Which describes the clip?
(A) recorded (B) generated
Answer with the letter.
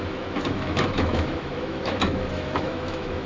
B